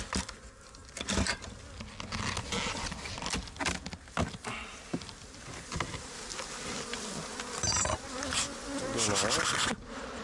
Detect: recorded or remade recorded